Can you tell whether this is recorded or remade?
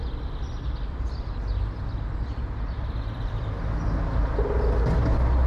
recorded